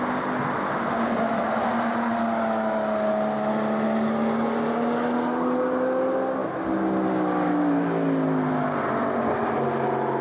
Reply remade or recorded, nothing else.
recorded